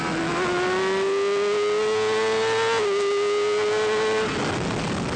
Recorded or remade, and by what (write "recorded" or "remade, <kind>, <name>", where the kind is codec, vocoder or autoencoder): recorded